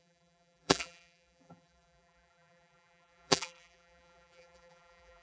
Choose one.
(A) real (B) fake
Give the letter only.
B